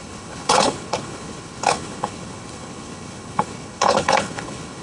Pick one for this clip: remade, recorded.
remade